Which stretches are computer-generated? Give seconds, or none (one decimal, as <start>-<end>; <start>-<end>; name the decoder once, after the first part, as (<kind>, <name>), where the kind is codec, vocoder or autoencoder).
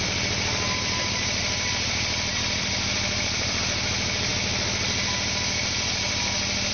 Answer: 1.4-3.6 (vocoder, BigVGAN v2)